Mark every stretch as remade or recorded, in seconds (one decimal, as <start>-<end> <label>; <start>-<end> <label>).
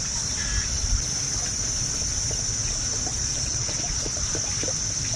0.0-3.1 recorded; 3.1-4.2 remade; 4.2-5.2 recorded